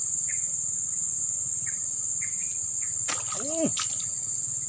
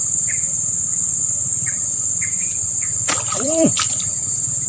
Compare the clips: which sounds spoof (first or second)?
second